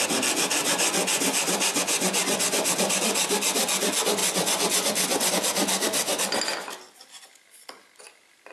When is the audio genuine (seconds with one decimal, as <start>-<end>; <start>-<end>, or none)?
0.0-0.6; 1.2-1.7; 3.0-4.2; 5.3-8.5